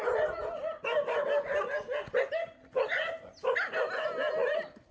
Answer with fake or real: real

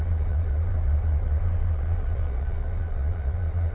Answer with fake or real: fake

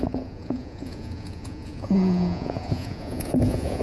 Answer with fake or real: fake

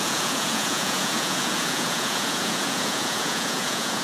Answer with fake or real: fake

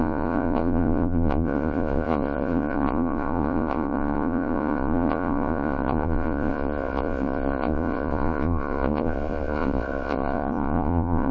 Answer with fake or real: fake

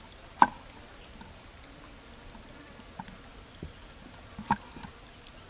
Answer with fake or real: real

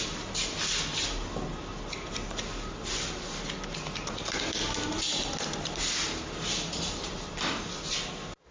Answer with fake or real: real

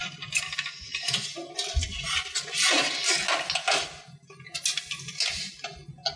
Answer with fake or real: real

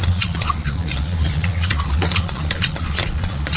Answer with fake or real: fake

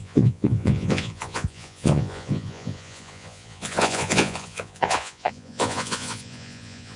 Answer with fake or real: fake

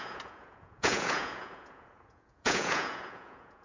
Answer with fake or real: fake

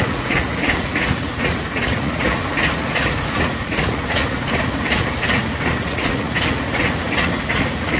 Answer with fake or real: fake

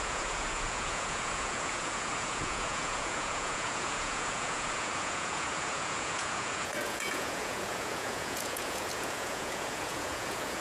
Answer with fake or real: fake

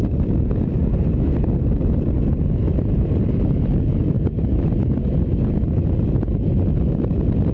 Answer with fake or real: real